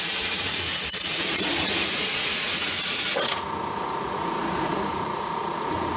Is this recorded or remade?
remade